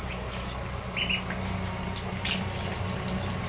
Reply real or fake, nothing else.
real